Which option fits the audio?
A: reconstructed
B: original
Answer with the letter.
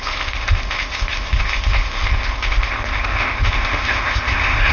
A